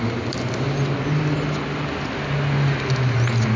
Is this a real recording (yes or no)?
yes